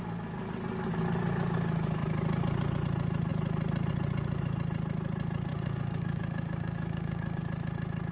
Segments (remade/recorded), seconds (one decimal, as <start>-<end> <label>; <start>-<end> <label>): 0.0-5.5 recorded; 5.5-7.4 remade; 7.4-8.1 recorded